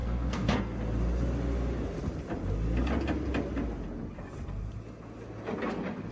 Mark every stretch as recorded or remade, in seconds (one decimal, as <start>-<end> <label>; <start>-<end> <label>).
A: 0.0-0.6 remade; 0.6-6.1 recorded